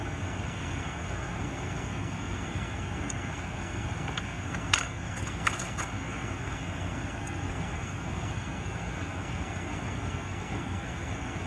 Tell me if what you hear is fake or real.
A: fake